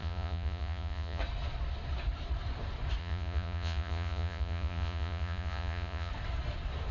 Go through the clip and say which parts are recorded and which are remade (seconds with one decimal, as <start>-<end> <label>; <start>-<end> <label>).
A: 0.0-1.2 remade; 1.2-3.0 recorded; 3.0-6.1 remade; 6.1-6.9 recorded